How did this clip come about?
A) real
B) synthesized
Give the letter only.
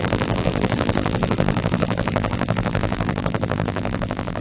B